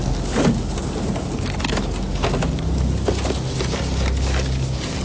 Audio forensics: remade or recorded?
recorded